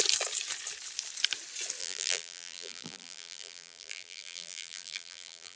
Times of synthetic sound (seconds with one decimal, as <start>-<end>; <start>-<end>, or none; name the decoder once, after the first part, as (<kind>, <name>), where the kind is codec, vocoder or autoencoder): 1.8-5.6 (vocoder, BigVGAN v2)